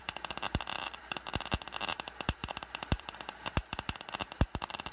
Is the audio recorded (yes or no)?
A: no